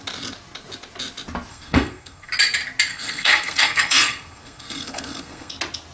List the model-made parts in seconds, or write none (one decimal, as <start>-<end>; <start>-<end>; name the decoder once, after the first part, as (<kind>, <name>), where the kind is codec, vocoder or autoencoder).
1.5-2.3 (codec, SNAC); 2.9-5.5